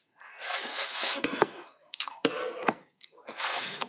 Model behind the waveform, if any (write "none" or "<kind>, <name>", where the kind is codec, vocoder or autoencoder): codec, SNAC